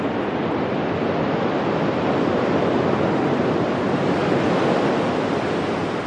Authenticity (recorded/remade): recorded